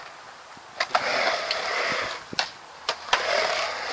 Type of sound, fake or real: real